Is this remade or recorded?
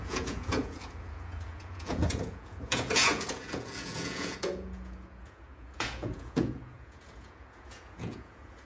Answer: remade